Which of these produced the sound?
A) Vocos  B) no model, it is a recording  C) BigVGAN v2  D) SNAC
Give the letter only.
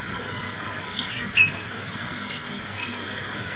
D